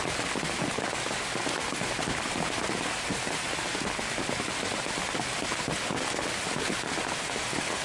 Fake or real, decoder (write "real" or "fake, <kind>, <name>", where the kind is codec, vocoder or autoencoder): real